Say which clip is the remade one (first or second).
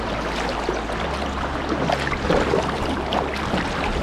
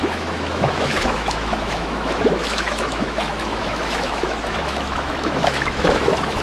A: second